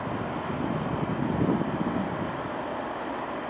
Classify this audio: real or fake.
real